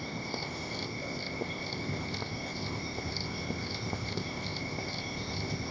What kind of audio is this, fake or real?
fake